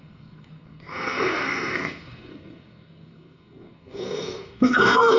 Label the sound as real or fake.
fake